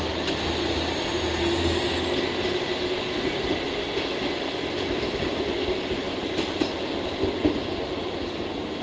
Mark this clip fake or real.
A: real